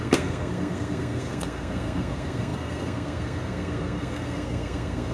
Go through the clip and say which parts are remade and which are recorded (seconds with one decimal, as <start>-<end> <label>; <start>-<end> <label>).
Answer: 0.0-5.1 remade